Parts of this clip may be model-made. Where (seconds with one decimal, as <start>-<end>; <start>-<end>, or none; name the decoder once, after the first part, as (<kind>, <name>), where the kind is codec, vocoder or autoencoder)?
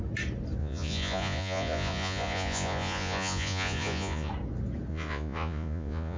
0.6-4.3 (vocoder, Vocos); 4.9-6.2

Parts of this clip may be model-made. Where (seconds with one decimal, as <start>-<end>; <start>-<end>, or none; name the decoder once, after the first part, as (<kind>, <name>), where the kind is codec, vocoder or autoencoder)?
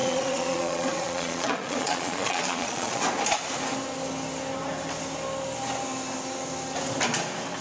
0.0-3.0 (vocoder, Vocos)